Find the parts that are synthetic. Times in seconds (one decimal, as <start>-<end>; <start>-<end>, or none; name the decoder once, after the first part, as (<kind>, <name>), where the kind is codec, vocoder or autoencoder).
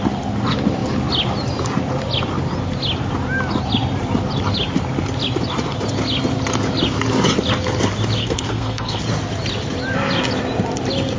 8.2-9.0 (codec, SNAC)